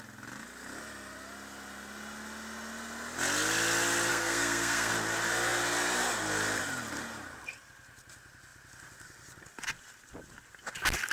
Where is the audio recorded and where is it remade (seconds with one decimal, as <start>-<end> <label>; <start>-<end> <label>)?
0.0-4.1 recorded; 4.1-4.9 remade; 4.9-11.1 recorded